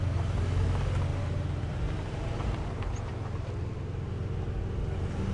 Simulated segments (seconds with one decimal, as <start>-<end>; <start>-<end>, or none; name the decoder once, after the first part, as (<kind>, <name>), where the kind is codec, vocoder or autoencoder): 1.1-3.5 (vocoder, BigVGAN v2)